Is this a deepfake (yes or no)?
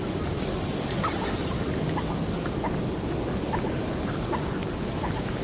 no